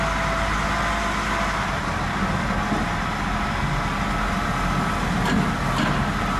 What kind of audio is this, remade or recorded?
recorded